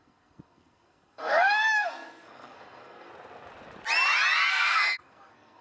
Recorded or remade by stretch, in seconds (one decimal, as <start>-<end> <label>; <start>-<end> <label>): 0.0-3.1 remade; 3.1-4.5 recorded; 4.5-5.6 remade